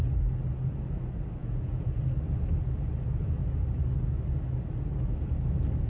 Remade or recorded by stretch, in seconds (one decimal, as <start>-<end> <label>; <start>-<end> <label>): 0.0-1.4 recorded; 1.4-2.0 remade; 2.0-5.9 recorded